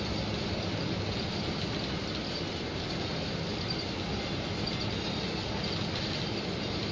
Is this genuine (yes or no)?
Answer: yes